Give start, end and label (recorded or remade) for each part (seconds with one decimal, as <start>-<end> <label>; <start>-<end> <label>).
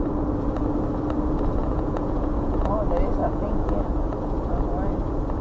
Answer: 0.0-1.6 recorded; 1.6-2.7 remade; 2.7-3.2 recorded; 3.2-4.5 remade; 4.5-5.4 recorded